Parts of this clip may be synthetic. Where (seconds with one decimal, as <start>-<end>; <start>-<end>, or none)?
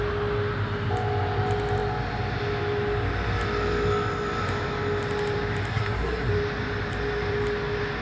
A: 5.7-6.3